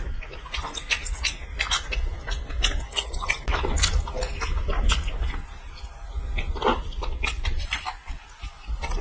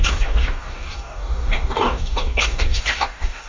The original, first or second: first